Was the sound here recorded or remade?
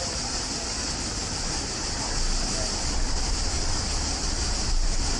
recorded